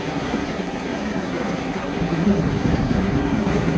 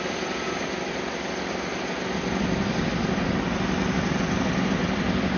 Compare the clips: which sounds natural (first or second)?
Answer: second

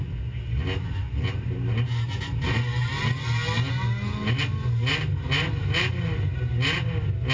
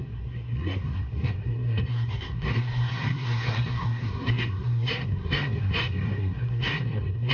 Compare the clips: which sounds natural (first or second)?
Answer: first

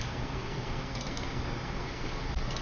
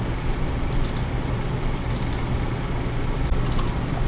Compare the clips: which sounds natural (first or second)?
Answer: second